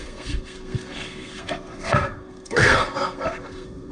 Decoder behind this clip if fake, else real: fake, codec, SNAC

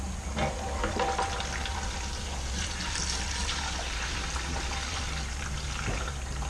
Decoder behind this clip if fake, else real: real